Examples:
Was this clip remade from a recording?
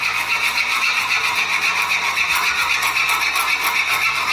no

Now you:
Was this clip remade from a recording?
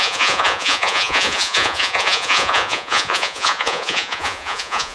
yes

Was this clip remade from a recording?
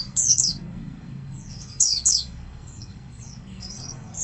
yes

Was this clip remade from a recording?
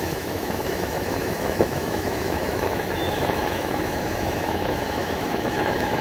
yes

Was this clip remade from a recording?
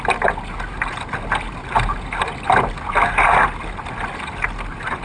no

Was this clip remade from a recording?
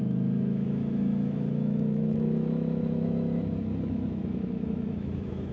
yes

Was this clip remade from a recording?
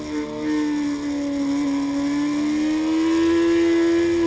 no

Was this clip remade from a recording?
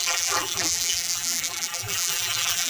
yes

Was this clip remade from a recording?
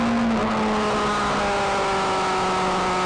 no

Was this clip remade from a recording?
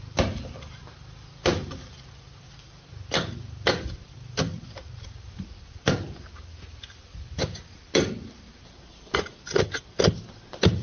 no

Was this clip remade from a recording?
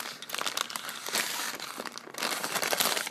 no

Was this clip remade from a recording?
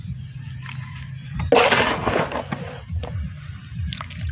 no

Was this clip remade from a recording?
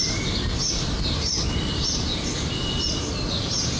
no